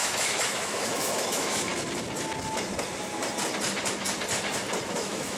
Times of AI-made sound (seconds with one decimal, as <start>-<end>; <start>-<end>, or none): 0.0-1.7; 4.9-5.4